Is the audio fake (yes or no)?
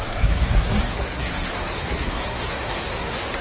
yes